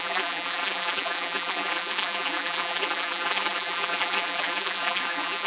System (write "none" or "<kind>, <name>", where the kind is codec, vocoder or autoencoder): vocoder, BigVGAN v2